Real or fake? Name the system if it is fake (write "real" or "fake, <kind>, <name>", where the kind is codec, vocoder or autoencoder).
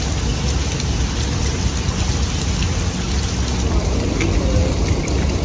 real